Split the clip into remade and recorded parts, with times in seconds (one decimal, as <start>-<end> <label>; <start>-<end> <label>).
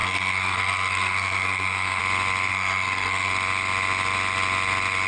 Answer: 0.0-2.0 remade; 2.0-2.5 recorded; 2.5-3.3 remade; 3.3-5.1 recorded